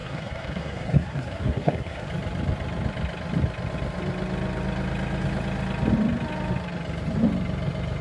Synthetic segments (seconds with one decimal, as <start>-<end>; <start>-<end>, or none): 0.0-2.1